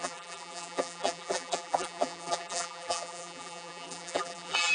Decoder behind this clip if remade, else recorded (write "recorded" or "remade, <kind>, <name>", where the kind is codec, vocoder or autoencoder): remade, vocoder, BigVGAN v2